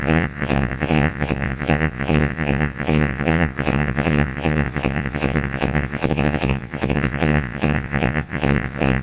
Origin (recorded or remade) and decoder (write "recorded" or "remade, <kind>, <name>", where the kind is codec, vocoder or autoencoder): remade, vocoder, Vocos